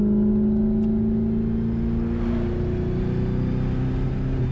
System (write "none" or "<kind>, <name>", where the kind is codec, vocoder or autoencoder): none